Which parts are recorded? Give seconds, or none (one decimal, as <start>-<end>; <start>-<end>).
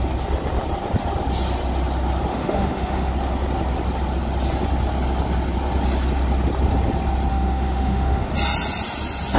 0.0-2.3; 3.1-7.3; 8.3-9.4